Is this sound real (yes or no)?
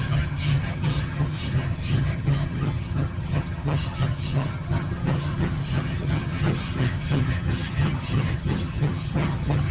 no